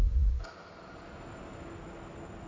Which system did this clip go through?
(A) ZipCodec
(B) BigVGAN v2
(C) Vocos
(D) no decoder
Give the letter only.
D